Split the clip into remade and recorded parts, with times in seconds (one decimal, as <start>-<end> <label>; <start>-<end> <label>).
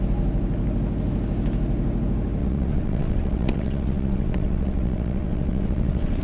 0.0-2.4 recorded; 2.4-6.2 remade